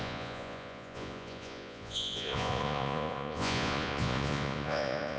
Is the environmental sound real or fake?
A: fake